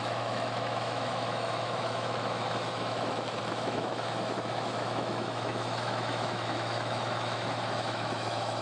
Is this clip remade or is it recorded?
remade